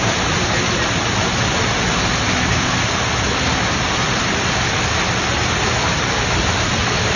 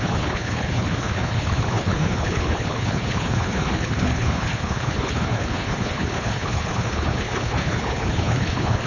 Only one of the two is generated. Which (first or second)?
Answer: second